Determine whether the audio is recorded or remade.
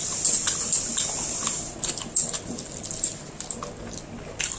recorded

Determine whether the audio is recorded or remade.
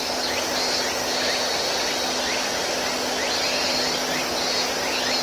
recorded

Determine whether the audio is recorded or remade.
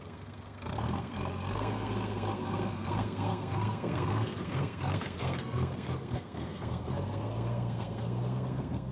remade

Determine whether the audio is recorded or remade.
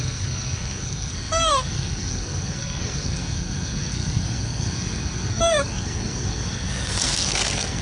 remade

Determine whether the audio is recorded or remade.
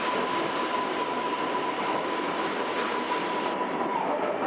recorded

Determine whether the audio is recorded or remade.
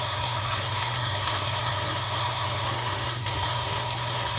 remade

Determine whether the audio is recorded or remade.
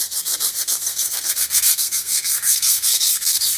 remade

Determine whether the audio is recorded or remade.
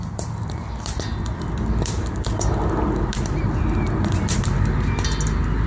recorded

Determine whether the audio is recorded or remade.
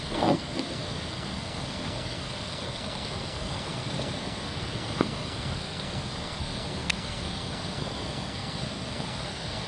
remade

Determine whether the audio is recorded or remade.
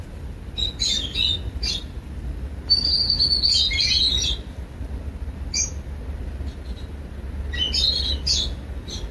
recorded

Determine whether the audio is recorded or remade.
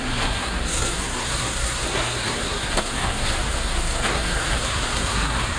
remade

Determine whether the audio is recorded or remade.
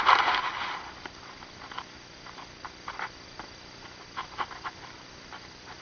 recorded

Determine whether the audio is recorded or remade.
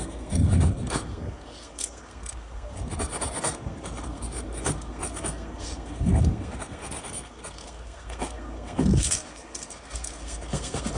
remade